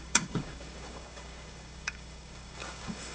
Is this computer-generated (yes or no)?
yes